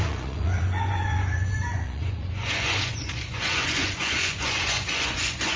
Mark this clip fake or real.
fake